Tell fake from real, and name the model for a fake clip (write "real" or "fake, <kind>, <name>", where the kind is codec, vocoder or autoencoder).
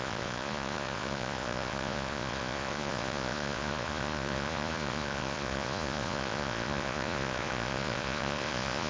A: fake, vocoder, Vocos